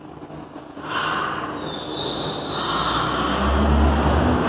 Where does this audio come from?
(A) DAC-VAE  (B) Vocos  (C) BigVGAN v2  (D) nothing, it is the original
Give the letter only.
D